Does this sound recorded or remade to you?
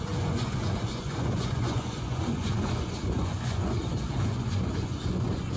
remade